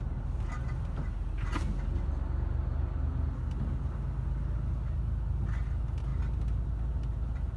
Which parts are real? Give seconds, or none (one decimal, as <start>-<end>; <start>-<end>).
0.0-7.6